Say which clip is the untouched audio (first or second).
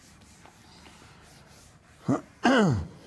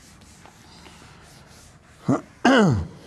second